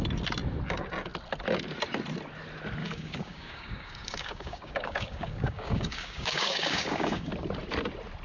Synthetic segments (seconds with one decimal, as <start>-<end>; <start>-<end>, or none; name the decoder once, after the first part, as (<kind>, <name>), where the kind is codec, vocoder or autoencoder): 2.8-7.3 (codec, DAC)

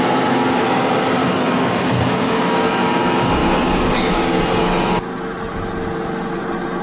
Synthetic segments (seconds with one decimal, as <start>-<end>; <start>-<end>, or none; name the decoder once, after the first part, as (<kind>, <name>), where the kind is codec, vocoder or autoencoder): 1.2-2.8 (codec, DAC); 3.4-4.4

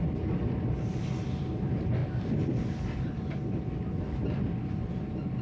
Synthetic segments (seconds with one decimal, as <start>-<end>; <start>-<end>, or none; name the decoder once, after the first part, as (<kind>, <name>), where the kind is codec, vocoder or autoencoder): none

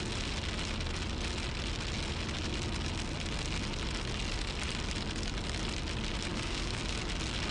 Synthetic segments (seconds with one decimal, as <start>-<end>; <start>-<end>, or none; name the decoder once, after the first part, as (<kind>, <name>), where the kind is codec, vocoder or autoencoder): 6.3-6.8 (codec, DAC)

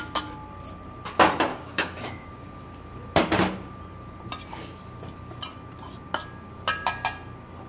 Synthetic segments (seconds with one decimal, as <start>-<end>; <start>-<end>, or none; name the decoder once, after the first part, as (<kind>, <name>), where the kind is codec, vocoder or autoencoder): 1.5-2.5 (codec, DAC)

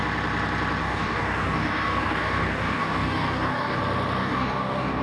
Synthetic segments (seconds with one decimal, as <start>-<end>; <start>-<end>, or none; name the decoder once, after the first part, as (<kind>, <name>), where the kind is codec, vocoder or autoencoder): 0.8-3.8 (codec, DAC); 4.2-5.0